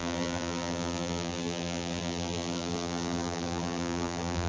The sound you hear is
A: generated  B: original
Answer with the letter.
A